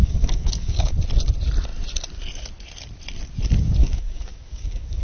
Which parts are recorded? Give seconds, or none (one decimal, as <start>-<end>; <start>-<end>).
0.9-3.8